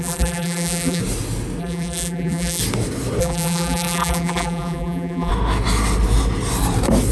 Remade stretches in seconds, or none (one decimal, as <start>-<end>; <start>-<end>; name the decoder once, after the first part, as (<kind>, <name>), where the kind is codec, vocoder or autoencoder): 0.0-1.0 (vocoder, BigVGAN v2); 1.6-2.6; 3.2-5.3